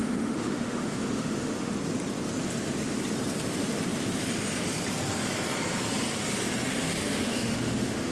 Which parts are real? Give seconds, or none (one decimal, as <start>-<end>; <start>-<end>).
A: 1.7-6.7

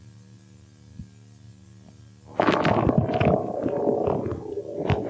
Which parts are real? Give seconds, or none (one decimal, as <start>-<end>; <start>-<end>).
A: 0.0-5.1

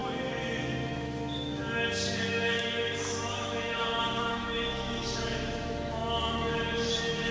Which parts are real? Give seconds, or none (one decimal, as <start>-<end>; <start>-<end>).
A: 0.0-0.6; 1.6-2.3

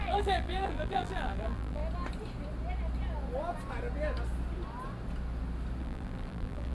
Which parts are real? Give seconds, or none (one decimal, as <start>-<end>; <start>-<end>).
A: 1.8-5.8